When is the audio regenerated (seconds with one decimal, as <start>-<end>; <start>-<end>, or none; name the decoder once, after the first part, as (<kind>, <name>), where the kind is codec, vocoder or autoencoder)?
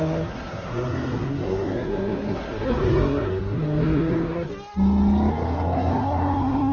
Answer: 0.0-4.5 (codec, SNAC); 5.3-6.7